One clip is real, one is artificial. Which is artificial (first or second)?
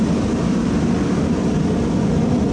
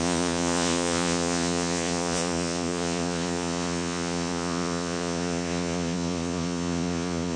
second